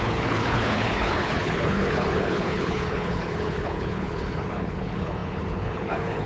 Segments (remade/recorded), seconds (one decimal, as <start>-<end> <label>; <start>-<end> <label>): 0.0-6.3 remade